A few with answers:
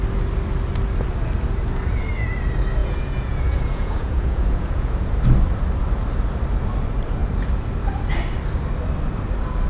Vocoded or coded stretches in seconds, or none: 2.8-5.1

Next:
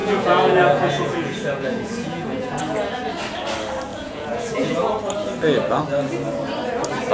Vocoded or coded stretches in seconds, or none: 0.0-2.6; 3.9-5.0

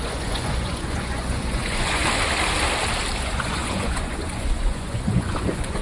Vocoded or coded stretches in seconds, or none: 0.0-2.0; 3.2-5.8

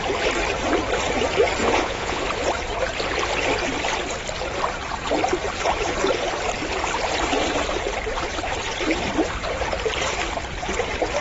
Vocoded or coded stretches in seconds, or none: 1.6-2.2

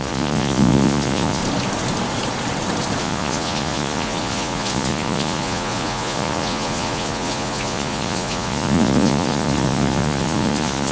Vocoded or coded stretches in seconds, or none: 0.0-1.4; 3.0-10.9

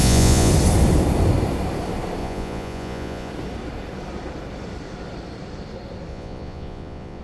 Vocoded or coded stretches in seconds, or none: 0.0-0.5; 2.2-3.3; 6.1-7.2